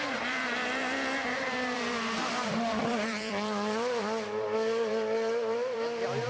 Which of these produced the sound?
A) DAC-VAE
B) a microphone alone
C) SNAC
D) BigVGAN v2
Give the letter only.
D